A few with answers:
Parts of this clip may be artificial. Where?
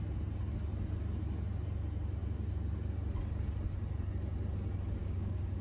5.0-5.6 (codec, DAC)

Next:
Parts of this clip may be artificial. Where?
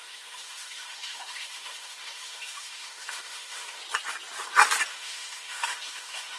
0.0-3.8 (autoencoder, DAC-VAE); 4.9-6.4